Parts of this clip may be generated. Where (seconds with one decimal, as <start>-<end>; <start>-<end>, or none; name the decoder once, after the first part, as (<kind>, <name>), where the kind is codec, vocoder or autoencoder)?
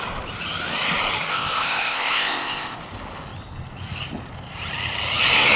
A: 1.3-2.8 (codec, ZipCodec)